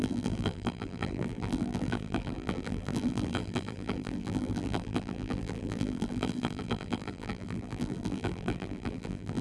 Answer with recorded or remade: remade